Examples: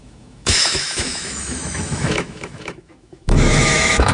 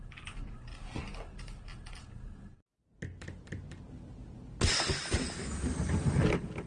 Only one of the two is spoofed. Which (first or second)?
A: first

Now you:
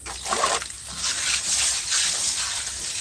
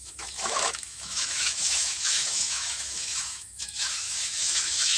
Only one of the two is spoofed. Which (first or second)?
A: second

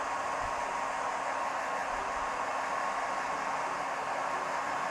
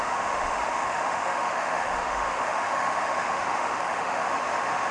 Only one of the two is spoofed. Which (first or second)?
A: second